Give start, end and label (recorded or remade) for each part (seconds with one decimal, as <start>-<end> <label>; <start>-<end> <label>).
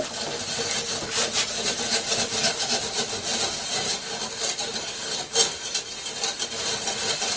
0.0-1.2 recorded; 1.2-2.4 remade; 2.4-7.4 recorded